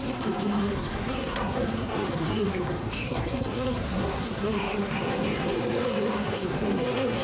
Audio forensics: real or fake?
fake